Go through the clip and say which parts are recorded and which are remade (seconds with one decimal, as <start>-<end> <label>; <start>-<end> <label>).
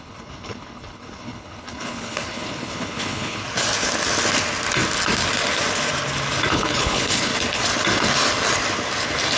0.0-3.4 remade; 3.4-6.5 recorded; 6.5-7.3 remade; 7.3-9.4 recorded